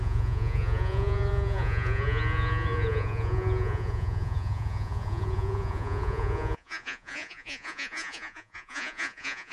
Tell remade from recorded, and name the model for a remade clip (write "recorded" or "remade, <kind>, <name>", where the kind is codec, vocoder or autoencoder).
remade, vocoder, Vocos